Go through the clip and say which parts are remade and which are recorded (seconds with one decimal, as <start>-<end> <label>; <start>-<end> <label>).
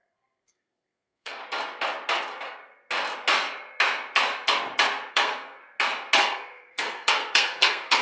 0.0-1.4 remade; 1.4-5.1 recorded; 5.1-5.6 remade; 5.6-6.2 recorded; 6.2-8.0 remade